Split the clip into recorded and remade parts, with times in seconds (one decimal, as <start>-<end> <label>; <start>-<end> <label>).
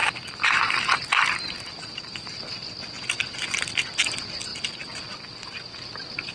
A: 0.0-6.3 recorded